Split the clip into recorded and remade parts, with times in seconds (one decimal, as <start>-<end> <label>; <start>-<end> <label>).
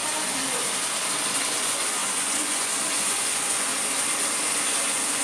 0.0-1.5 recorded; 1.5-3.7 remade; 3.7-4.5 recorded; 4.5-5.2 remade